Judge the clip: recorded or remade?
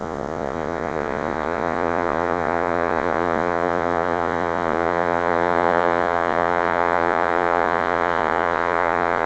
remade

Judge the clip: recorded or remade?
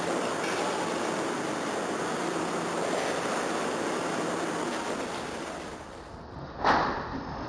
recorded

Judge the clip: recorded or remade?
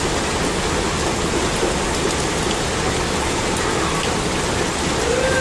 recorded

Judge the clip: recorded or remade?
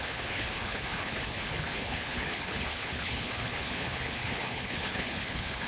remade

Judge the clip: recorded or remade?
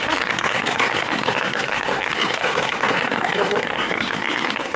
remade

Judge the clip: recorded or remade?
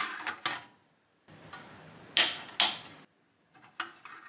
recorded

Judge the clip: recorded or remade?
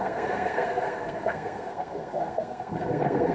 remade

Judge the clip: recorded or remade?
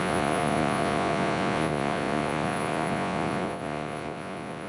remade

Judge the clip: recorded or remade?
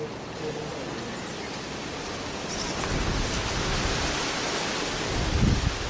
recorded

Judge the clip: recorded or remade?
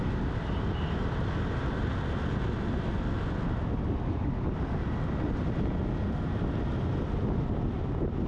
recorded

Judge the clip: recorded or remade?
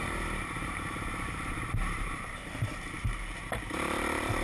remade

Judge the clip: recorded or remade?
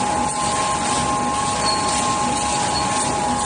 recorded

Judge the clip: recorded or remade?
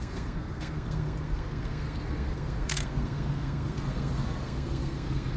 remade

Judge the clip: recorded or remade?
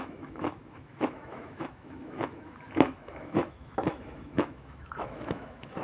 remade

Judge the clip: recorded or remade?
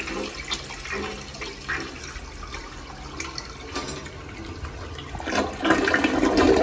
recorded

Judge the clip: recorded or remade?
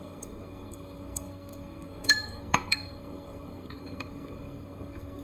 remade